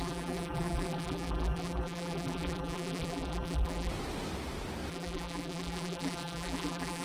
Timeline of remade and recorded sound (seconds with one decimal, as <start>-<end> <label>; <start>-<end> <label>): 0.0-3.9 remade; 3.9-4.9 recorded; 4.9-7.0 remade